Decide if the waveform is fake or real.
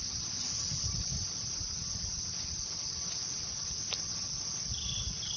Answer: real